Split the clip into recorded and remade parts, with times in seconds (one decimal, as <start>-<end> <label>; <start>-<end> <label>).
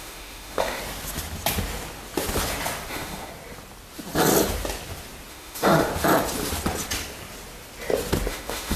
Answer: 0.0-0.8 remade; 0.8-2.9 recorded; 2.9-3.3 remade; 3.3-5.3 recorded; 5.3-5.9 remade; 5.9-8.3 recorded; 8.3-8.8 remade